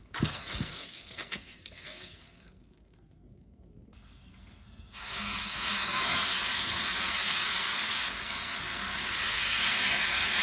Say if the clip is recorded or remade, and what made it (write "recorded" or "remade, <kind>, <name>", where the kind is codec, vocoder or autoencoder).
remade, codec, SNAC